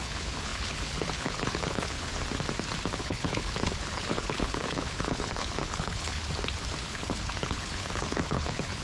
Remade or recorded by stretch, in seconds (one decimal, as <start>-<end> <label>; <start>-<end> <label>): 0.0-2.1 remade; 2.1-3.0 recorded; 3.0-6.2 remade; 6.2-6.8 recorded; 6.8-8.8 remade